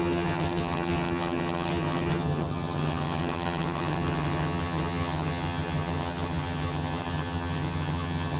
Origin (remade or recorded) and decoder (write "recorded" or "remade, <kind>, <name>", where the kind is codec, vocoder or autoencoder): remade, vocoder, HiFi-GAN